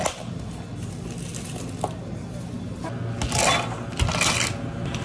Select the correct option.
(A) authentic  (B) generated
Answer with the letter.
A